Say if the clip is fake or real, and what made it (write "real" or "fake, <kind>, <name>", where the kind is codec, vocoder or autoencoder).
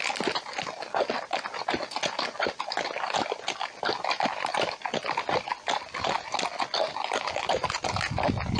real